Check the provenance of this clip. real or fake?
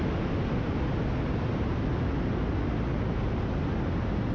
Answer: real